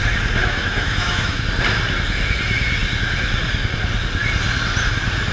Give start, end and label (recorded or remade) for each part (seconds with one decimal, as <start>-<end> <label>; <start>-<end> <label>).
0.0-0.4 recorded; 0.4-1.4 remade; 1.4-5.3 recorded